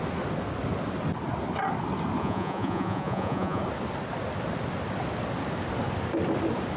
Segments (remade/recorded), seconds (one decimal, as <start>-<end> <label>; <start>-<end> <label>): 0.0-2.2 recorded; 2.2-3.6 remade; 3.6-6.8 recorded